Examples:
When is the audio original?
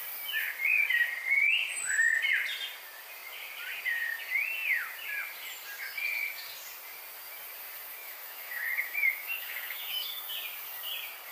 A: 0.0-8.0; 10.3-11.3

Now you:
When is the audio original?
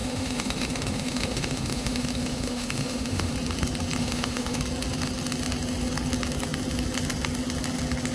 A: 3.3-4.0; 4.6-8.1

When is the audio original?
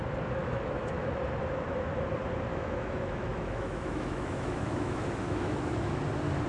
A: 0.0-0.4; 1.2-2.5; 6.0-6.5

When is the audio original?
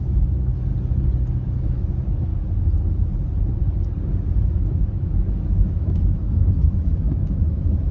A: 0.7-1.7; 2.3-4.8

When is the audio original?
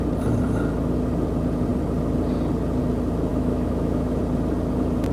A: 0.0-3.3; 4.2-5.1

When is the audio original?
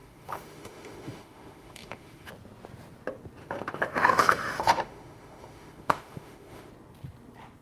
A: 2.3-3.4; 6.7-7.6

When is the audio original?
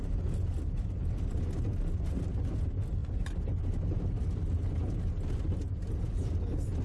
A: 0.0-6.8